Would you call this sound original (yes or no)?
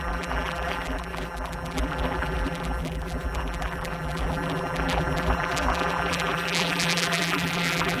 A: no